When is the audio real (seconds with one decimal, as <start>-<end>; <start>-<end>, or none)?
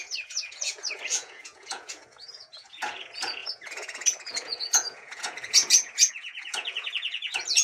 none